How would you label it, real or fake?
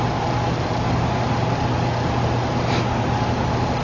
real